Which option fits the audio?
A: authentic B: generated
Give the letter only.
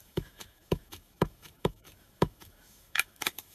B